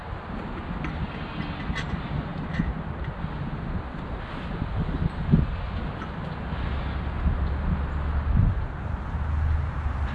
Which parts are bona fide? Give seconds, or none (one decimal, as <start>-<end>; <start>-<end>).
0.0-10.1